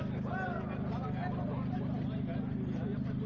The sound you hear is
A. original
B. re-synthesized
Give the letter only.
A